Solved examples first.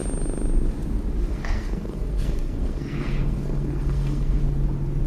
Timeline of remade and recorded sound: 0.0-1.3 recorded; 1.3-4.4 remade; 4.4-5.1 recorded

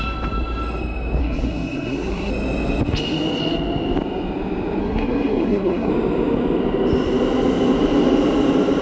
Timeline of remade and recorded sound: 0.0-1.2 recorded; 1.2-2.3 remade; 2.3-4.8 recorded; 4.8-5.9 remade; 5.9-8.8 recorded

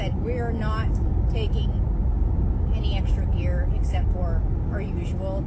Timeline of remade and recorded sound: 0.0-5.5 recorded